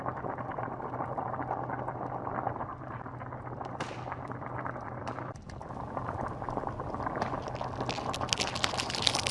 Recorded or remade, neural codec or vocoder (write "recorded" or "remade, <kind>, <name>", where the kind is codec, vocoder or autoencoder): recorded